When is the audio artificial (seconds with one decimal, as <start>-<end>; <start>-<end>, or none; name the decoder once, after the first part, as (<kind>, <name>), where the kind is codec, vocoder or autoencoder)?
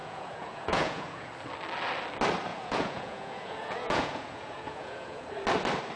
0.0-1.3 (vocoder, Vocos); 2.5-5.3